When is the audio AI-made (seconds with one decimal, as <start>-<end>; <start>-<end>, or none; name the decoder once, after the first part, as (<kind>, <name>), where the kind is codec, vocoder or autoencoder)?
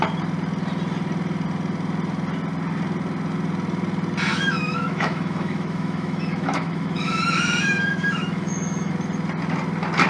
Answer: 4.3-8.9 (autoencoder, DAC-VAE)